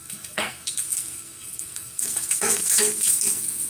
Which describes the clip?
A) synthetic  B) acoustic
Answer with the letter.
A